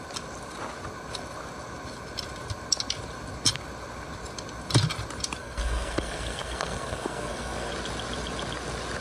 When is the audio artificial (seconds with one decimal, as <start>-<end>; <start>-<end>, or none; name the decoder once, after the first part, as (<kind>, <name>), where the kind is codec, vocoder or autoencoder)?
5.4-7.7 (codec, SNAC)